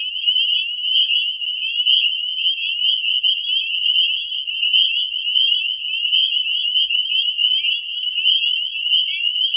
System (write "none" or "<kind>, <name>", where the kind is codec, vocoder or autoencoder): none